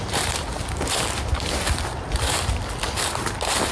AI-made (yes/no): no